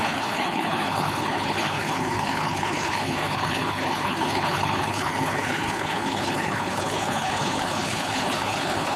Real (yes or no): no